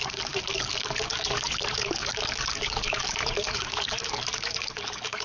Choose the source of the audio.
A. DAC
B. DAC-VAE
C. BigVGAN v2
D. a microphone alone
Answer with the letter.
A